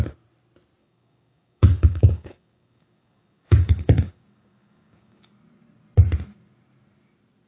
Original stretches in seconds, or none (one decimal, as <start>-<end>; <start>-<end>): 0.0-0.8; 5.3-7.5